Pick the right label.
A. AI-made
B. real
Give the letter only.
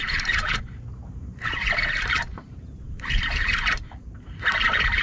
A